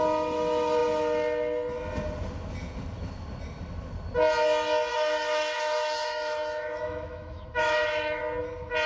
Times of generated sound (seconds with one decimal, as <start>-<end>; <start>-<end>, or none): 4.9-8.2